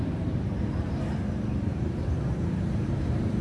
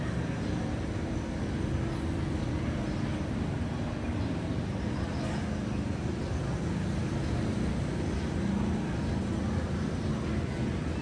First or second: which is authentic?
second